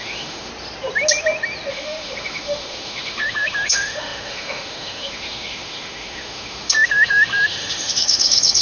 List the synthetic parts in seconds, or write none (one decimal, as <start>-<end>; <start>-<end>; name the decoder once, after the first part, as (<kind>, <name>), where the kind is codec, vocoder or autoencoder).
0.0-0.5 (autoencoder, DAC-VAE); 1.7-8.6